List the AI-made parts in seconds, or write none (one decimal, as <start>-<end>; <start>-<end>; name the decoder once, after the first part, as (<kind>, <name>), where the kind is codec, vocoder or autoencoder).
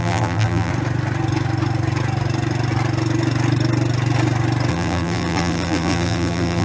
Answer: 0.0-0.7 (vocoder, BigVGAN v2); 4.7-6.6